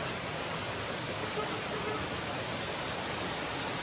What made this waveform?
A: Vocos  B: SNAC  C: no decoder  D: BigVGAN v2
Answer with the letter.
C